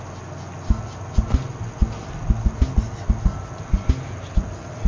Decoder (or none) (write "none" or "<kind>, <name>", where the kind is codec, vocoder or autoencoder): none